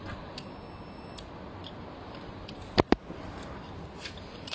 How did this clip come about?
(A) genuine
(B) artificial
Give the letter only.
A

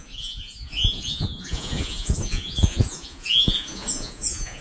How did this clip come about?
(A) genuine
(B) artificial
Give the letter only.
B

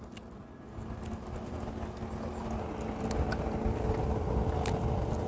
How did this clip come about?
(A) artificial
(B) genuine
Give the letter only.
B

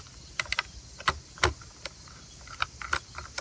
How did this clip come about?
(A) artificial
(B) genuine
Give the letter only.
B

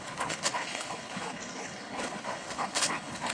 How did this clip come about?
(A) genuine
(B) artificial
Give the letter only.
B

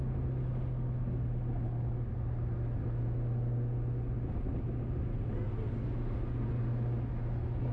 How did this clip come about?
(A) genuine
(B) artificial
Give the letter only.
A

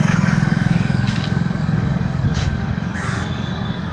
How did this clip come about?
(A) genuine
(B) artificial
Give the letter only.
B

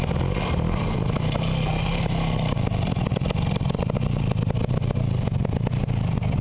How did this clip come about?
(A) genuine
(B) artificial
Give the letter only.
A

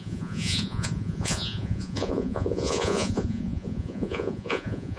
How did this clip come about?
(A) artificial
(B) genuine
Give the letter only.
A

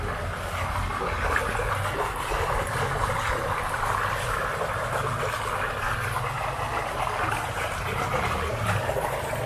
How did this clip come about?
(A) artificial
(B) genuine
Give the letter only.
B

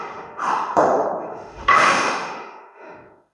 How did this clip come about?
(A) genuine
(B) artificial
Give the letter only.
B